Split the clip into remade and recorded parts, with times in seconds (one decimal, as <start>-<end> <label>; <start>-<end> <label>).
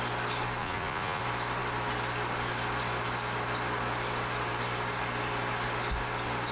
0.0-0.6 recorded; 0.6-1.2 remade; 1.2-6.5 recorded